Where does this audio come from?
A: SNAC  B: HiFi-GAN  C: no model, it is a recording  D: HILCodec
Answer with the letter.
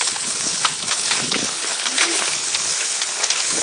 D